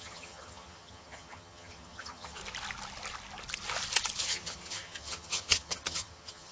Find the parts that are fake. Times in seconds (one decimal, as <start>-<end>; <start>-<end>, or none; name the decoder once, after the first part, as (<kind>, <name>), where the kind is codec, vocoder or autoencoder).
0.0-2.4 (vocoder, HiFi-GAN); 4.2-6.5